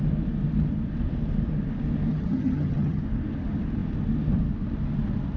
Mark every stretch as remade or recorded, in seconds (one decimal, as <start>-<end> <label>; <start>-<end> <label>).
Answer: 0.0-2.1 recorded; 2.1-3.0 remade; 3.0-5.4 recorded